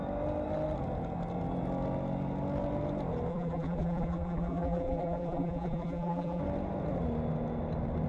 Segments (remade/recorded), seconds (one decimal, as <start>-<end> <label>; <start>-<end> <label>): 0.0-3.3 recorded; 3.3-6.4 remade; 6.4-8.1 recorded